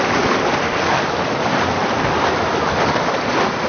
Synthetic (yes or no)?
no